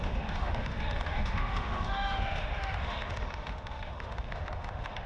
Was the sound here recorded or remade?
remade